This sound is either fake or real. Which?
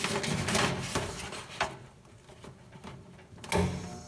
real